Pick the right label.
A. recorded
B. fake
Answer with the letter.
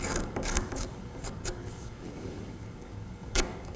B